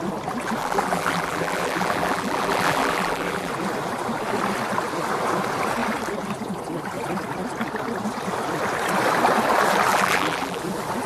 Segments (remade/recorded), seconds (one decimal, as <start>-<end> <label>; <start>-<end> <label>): 0.0-0.6 recorded; 0.6-3.5 remade; 3.5-9.9 recorded; 9.9-10.6 remade; 10.6-11.1 recorded